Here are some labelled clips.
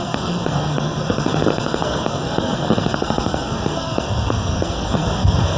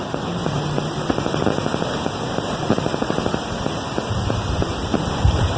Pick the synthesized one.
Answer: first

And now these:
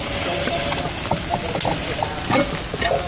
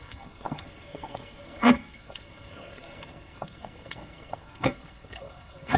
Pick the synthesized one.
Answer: second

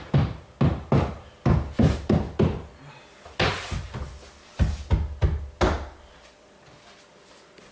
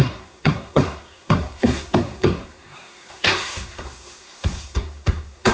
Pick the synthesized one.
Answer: second